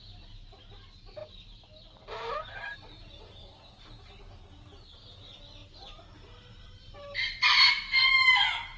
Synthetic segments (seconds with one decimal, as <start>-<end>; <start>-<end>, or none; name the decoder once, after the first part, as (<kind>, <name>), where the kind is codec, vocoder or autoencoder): 1.2-4.2 (vocoder, BigVGAN v2); 5.6-7.7